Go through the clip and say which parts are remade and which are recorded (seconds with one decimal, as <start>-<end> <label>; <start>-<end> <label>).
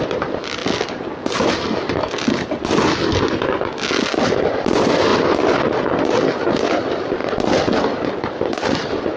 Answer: 0.0-0.6 remade; 0.6-4.2 recorded; 4.2-5.1 remade; 5.1-6.7 recorded; 6.7-7.2 remade; 7.2-8.4 recorded; 8.4-9.2 remade